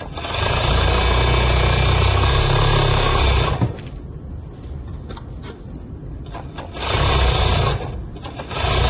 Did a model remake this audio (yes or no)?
no